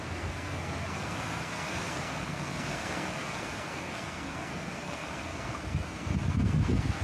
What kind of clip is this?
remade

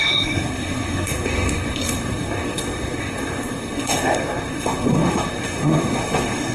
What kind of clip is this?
remade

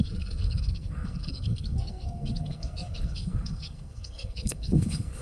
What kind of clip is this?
remade